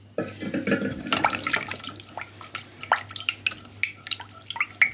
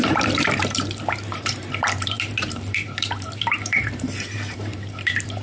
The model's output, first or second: second